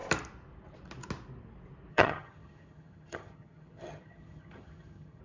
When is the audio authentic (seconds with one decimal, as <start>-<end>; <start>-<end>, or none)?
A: 0.0-1.9